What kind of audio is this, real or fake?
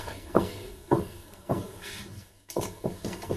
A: fake